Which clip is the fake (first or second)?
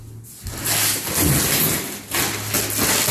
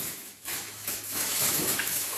second